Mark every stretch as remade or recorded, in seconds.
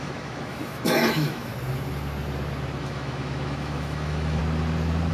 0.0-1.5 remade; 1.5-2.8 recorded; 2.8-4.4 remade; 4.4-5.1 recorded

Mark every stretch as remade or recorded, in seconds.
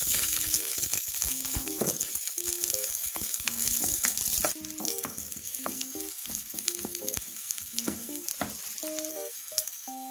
0.0-4.2 remade; 4.2-4.8 recorded; 4.8-8.3 remade; 8.3-9.1 recorded; 9.1-10.1 remade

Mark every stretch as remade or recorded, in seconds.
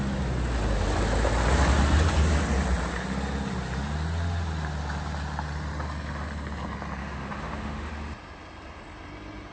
0.0-7.0 recorded; 7.0-7.9 remade; 7.9-9.5 recorded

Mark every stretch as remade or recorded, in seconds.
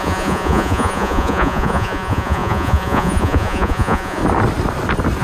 0.0-4.2 remade; 4.2-5.2 recorded